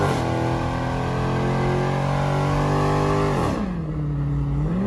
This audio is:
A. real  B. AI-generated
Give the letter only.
A